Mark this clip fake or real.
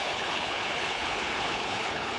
fake